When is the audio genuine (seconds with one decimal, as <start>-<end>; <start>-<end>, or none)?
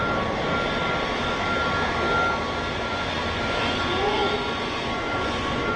0.0-2.9